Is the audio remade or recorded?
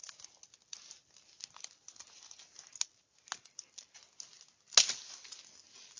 recorded